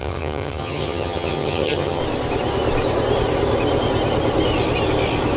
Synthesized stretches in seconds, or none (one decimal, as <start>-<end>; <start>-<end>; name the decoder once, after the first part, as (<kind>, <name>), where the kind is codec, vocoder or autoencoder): 0.0-2.0 (vocoder, HiFi-GAN)

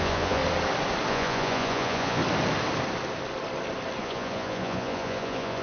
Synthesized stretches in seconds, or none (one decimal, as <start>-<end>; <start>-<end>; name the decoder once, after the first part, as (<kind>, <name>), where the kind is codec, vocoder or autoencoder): 0.0-0.4 (vocoder, Vocos); 1.1-2.2; 4.0-5.6